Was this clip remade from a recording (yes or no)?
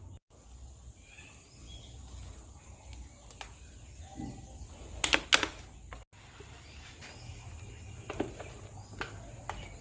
no